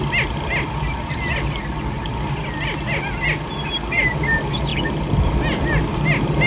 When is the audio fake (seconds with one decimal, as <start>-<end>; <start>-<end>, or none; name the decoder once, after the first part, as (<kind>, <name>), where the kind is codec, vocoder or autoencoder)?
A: none